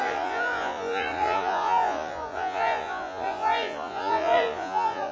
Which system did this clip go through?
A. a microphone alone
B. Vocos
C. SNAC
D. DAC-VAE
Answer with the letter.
B